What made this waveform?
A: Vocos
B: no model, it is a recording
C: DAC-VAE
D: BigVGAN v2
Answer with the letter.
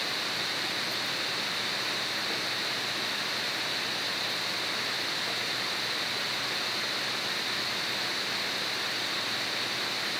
B